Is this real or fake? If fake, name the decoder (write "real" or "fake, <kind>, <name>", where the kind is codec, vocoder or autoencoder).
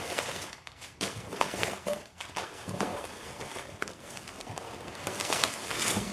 fake, codec, SNAC